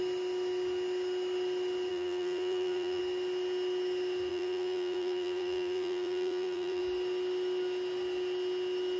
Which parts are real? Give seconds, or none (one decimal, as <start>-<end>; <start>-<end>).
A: 0.0-1.9; 3.0-4.3; 6.8-9.0